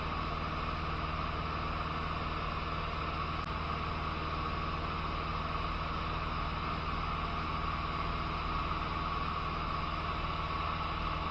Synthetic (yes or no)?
no